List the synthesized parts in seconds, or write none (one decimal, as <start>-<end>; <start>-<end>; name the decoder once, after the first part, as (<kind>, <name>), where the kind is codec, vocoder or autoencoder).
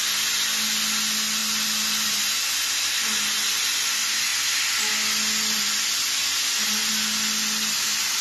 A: none